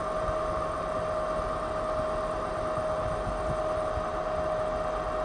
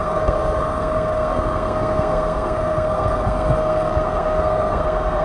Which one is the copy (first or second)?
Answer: second